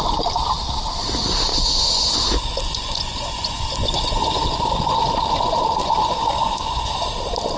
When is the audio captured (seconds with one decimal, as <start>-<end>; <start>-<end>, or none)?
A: 0.0-1.5; 5.1-5.8; 6.9-7.6